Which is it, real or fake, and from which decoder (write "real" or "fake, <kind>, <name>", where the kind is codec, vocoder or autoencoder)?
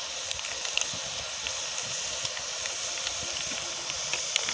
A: real